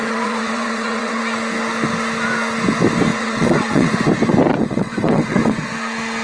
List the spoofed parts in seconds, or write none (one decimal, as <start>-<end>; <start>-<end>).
0.0-1.2; 3.1-3.9; 4.5-5.7